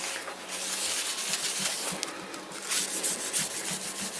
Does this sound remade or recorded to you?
recorded